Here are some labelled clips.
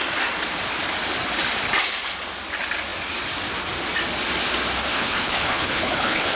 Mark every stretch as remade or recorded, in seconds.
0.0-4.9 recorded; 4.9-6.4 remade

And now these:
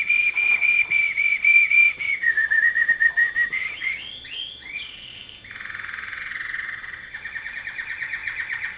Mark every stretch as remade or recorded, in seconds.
0.0-3.2 remade; 3.2-3.8 recorded; 3.8-5.2 remade; 5.2-6.2 recorded; 6.2-8.8 remade

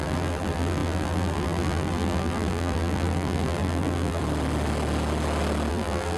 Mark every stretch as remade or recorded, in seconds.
0.0-4.2 remade; 4.2-5.7 recorded; 5.7-6.2 remade